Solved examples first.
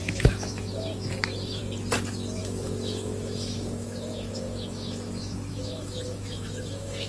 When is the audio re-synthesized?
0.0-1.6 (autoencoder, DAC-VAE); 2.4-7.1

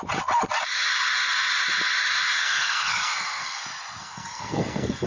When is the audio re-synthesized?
2.4-3.6 (codec, SNAC); 4.0-5.1

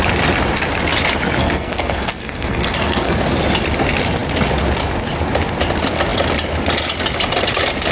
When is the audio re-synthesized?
1.4-3.1 (codec, SNAC)

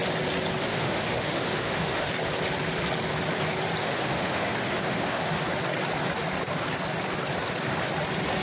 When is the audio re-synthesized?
0.6-2.1 (autoencoder, DAC-VAE); 3.8-5.4

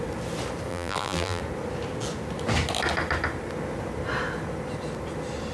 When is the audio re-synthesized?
0.7-1.4 (vocoder, BigVGAN v2)

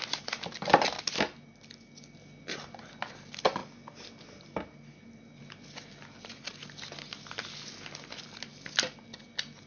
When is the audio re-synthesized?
none

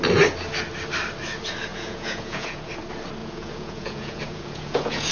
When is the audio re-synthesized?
1.7-2.7 (vocoder, Vocos); 3.2-5.1